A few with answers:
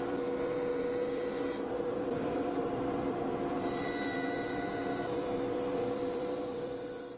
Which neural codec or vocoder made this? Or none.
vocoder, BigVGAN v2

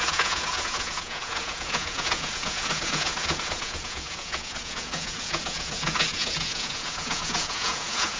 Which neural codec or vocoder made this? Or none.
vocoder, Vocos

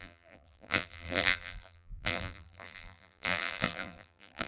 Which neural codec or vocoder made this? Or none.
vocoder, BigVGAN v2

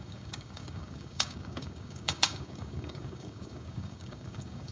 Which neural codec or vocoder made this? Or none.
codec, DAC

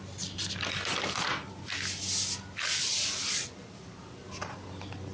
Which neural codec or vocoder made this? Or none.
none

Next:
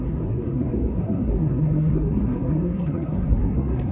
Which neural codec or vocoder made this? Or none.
codec, SNAC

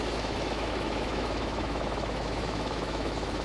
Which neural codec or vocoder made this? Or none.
autoencoder, DAC-VAE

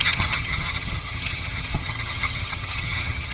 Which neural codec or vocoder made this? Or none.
vocoder, HiFi-GAN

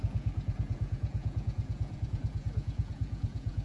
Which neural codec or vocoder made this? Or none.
vocoder, Vocos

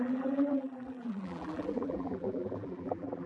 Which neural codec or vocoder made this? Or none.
vocoder, BigVGAN v2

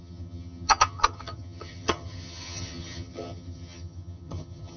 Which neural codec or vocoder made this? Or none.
vocoder, HiFi-GAN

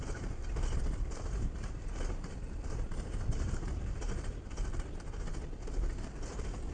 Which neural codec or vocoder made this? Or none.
vocoder, BigVGAN v2